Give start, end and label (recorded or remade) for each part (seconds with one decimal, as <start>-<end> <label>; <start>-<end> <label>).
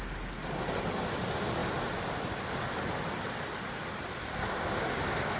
0.0-5.4 recorded